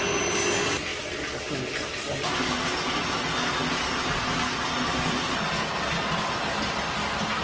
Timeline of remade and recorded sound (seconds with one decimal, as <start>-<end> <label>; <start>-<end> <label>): 0.0-7.4 recorded